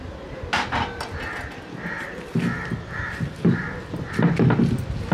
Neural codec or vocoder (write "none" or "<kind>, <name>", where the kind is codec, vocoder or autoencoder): none